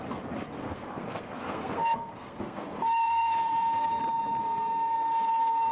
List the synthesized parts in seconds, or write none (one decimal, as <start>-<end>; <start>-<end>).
0.6-4.0; 4.4-5.7